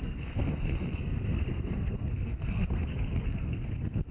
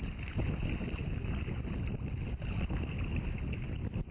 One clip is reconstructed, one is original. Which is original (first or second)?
second